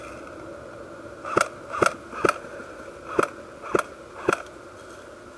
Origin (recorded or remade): recorded